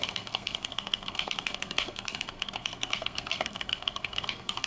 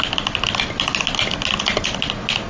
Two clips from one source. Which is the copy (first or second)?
first